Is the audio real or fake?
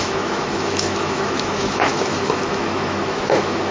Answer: fake